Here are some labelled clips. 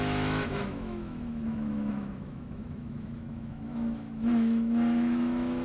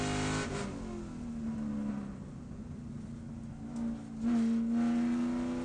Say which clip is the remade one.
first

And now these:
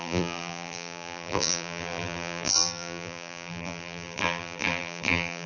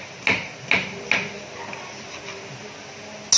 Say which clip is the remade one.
first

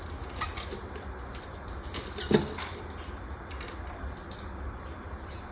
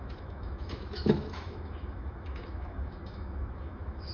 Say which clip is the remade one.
second